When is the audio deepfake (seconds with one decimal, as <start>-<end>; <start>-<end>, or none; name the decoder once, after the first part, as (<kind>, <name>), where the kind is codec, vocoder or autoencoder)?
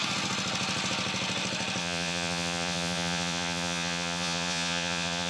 1.8-5.3 (vocoder, Vocos)